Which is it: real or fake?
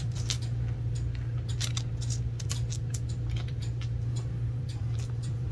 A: fake